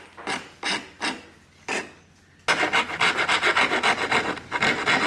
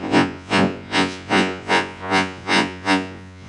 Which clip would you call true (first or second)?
first